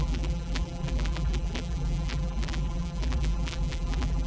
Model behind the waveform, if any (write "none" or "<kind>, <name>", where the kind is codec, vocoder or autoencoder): vocoder, BigVGAN v2